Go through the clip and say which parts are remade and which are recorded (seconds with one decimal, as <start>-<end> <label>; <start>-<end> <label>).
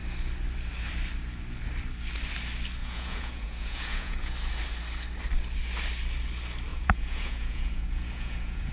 0.0-2.8 recorded; 2.8-4.3 remade; 4.3-6.7 recorded; 6.7-8.7 remade